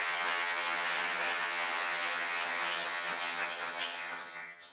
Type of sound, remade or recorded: remade